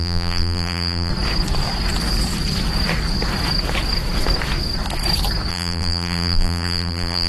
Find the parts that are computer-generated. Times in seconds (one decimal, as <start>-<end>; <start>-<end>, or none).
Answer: 0.0-1.1; 5.5-7.3